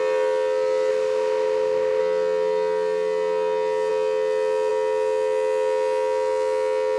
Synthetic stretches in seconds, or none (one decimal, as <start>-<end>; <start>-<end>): 0.9-2.0